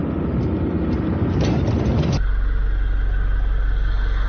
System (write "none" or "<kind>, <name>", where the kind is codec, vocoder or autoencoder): none